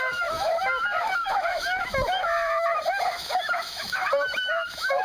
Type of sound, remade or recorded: remade